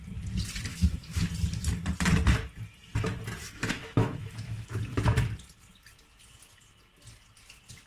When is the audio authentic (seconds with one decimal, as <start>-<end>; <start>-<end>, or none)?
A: 0.0-0.7; 1.3-3.4; 4.8-7.9